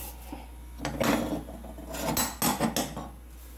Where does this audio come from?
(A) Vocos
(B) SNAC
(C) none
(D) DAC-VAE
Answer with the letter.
C